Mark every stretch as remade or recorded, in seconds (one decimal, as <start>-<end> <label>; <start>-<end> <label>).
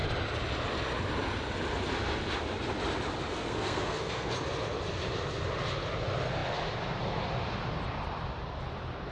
0.0-3.3 recorded; 3.3-4.3 remade; 4.3-9.1 recorded